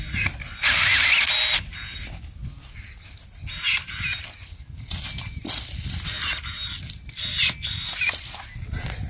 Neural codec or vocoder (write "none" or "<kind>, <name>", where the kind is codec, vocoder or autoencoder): none